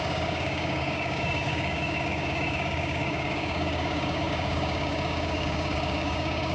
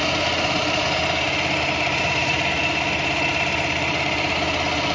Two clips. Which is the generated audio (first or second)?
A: first